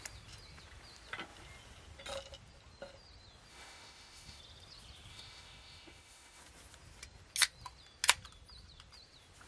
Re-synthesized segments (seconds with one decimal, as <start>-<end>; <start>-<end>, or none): 3.5-4.4; 5.1-6.4